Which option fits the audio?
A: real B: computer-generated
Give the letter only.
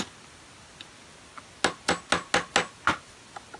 A